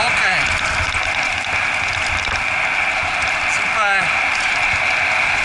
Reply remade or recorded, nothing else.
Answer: recorded